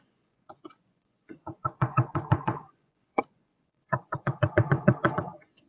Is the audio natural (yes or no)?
no